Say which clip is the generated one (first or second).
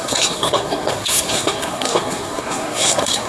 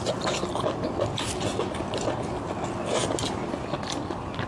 first